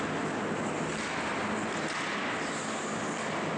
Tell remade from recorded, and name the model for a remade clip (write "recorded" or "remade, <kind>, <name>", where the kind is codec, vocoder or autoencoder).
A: recorded